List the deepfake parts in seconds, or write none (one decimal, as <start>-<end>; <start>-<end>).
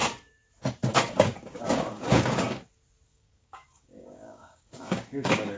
0.9-2.6; 3.1-5.6